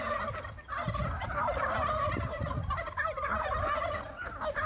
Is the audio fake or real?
real